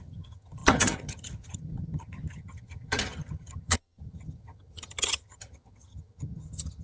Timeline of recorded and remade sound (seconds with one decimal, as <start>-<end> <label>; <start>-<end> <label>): 0.0-6.8 remade